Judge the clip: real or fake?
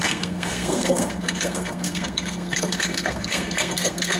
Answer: fake